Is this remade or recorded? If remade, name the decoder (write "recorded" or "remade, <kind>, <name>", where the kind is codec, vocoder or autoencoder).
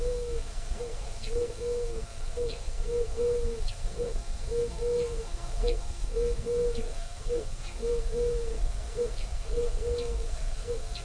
remade, codec, SNAC